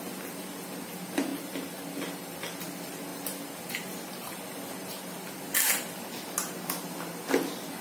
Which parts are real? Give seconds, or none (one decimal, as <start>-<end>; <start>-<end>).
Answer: 0.0-7.8